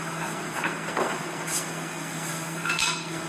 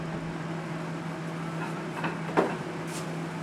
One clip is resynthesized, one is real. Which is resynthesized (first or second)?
first